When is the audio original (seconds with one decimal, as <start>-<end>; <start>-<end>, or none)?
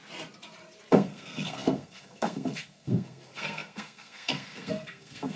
0.0-0.9